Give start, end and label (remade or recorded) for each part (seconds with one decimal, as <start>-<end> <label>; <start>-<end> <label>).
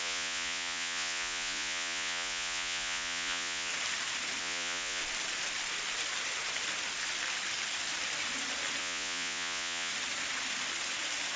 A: 0.0-3.7 remade; 3.7-4.4 recorded; 4.4-5.0 remade; 5.0-8.8 recorded; 8.8-9.9 remade; 9.9-11.4 recorded